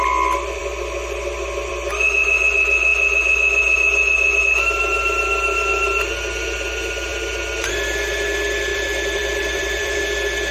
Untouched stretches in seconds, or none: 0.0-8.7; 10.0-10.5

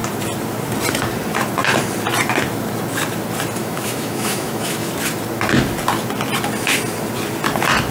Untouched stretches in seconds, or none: 0.0-3.6; 4.9-7.9